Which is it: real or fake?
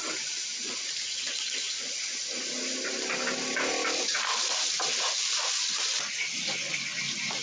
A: real